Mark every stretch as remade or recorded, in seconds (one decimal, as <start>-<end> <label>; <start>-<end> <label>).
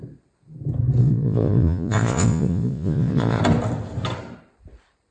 0.0-1.0 recorded; 1.0-3.4 remade; 3.4-5.1 recorded